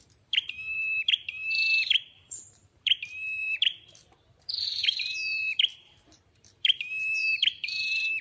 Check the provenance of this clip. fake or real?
fake